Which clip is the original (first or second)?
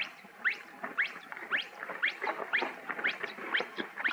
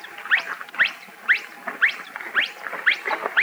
second